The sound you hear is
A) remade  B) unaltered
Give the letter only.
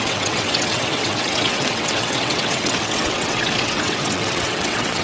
A